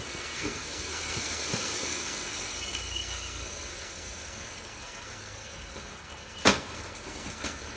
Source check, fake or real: fake